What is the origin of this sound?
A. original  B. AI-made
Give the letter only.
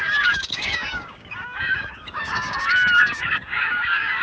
B